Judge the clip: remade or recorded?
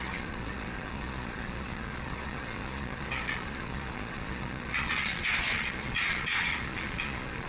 remade